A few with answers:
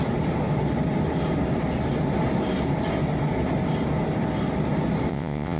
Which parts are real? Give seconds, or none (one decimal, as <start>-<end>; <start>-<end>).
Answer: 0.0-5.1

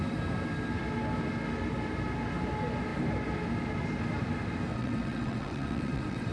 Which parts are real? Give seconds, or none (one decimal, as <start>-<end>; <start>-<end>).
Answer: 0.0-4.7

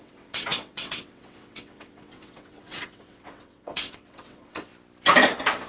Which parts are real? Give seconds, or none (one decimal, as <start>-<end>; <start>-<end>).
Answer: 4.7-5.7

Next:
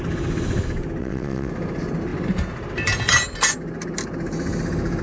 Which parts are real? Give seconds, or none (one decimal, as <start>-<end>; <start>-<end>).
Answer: 0.0-1.0; 1.5-5.0